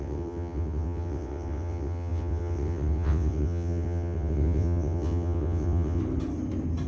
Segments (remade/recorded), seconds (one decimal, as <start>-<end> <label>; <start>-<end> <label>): 0.0-6.0 remade; 6.0-6.9 recorded